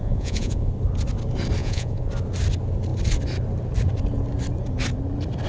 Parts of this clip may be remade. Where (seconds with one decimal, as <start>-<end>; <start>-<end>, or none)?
0.0-0.7; 1.6-2.1